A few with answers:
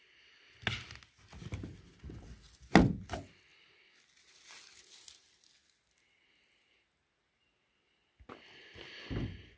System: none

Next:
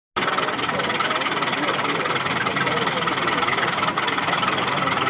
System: none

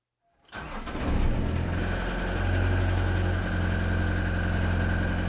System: none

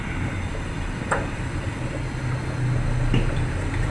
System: none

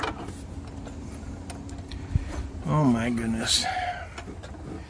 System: none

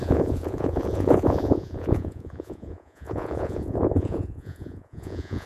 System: vocoder, Vocos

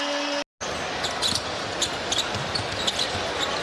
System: none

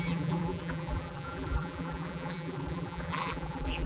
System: vocoder, BigVGAN v2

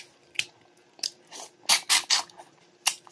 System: none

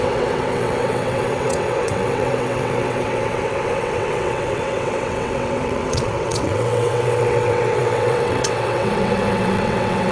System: vocoder, WaveNeXt